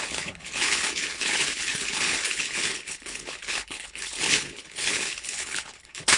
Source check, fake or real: fake